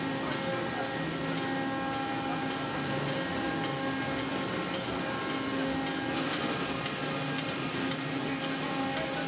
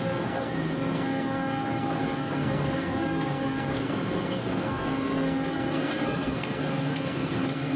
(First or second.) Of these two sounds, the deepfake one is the second